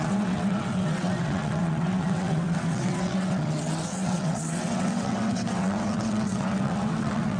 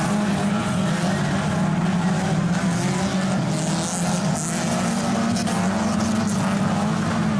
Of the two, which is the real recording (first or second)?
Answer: second